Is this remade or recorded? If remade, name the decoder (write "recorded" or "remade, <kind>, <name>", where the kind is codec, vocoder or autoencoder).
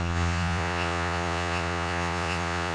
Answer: remade, vocoder, Vocos